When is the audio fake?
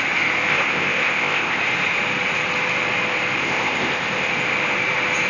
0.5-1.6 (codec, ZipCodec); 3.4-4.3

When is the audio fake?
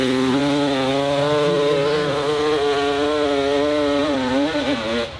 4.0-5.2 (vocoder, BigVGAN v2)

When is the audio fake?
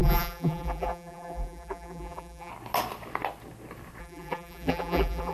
0.0-2.5 (vocoder, BigVGAN v2); 4.0-5.3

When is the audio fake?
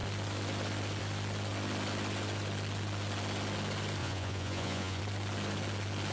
4.0-5.0 (vocoder, Vocos)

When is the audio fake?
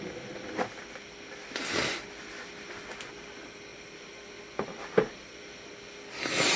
none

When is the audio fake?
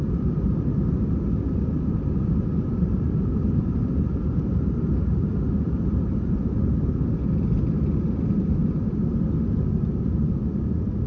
2.7-6.9 (vocoder, BigVGAN v2)